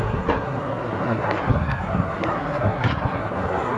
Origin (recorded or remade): remade